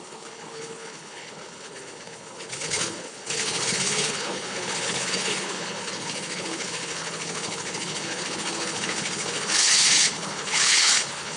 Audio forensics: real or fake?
fake